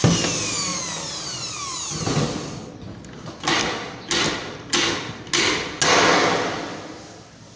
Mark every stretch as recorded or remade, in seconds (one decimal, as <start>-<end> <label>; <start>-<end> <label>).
0.0-7.6 recorded